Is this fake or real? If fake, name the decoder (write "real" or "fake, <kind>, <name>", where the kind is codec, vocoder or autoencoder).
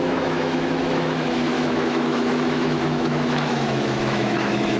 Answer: fake, autoencoder, DAC-VAE